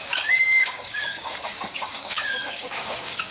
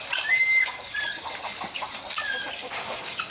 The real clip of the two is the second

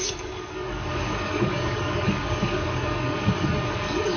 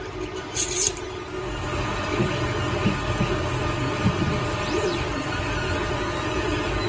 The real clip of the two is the second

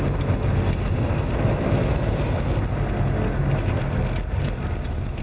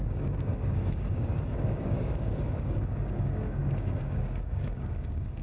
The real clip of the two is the first